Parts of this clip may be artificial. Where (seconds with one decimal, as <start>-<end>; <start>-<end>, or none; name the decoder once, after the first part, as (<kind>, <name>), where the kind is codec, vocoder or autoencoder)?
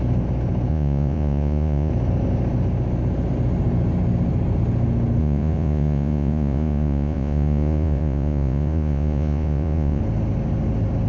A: 0.7-1.9 (vocoder, Vocos); 5.2-10.0